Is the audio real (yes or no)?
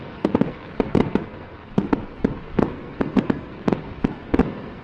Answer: no